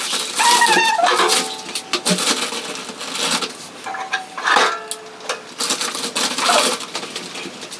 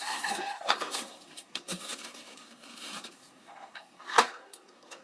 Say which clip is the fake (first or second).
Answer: second